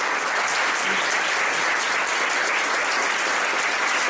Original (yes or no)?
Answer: yes